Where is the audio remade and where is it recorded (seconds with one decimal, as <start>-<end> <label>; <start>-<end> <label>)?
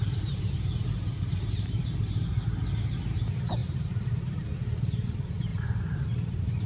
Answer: 0.0-1.8 remade; 1.8-3.6 recorded; 3.6-4.4 remade; 4.4-5.5 recorded; 5.5-6.7 remade